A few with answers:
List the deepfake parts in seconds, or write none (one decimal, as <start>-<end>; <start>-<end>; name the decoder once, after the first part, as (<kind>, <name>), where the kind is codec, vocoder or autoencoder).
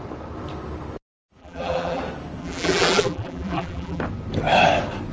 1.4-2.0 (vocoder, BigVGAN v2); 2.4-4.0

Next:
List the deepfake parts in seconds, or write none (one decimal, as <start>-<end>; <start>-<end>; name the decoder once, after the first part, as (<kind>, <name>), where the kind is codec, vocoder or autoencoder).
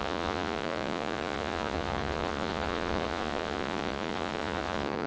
0.0-5.1 (vocoder, Vocos)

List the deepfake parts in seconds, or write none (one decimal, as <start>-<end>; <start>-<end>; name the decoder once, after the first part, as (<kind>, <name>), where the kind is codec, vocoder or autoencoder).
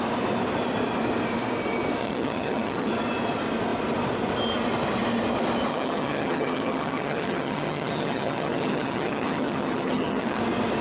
2.0-2.9 (vocoder, HiFi-GAN); 5.7-10.4